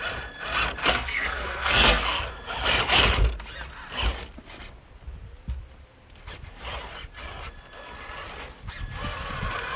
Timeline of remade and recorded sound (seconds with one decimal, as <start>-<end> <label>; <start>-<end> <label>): 0.0-0.8 recorded; 0.8-2.3 remade; 2.3-9.8 recorded